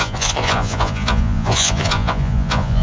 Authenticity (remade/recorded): remade